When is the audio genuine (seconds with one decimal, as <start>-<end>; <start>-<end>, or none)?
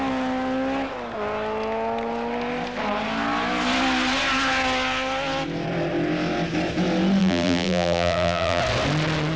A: 0.0-7.2; 8.6-9.4